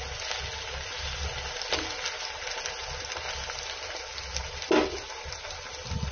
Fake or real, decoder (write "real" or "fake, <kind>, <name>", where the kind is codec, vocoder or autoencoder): real